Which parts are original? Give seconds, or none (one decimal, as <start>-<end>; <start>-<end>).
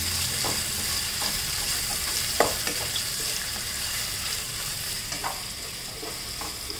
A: 0.0-1.9; 5.0-6.8